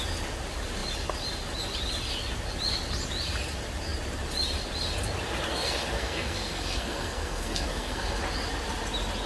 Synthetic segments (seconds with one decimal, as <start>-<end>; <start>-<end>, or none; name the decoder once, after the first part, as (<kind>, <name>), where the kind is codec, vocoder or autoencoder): 5.5-8.2 (codec, SNAC)